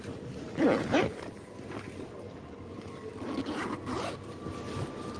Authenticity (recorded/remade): recorded